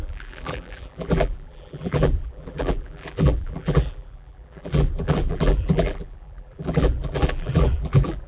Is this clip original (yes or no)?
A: no